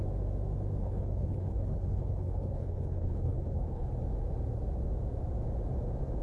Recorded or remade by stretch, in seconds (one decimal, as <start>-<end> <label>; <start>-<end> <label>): 0.0-0.8 recorded; 0.8-3.9 remade; 3.9-6.2 recorded